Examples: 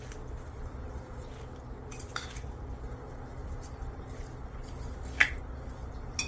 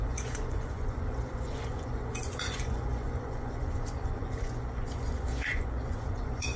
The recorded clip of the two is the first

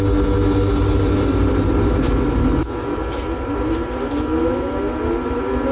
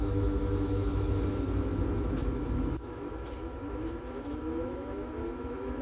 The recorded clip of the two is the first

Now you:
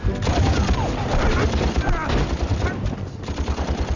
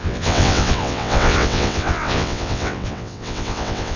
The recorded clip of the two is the first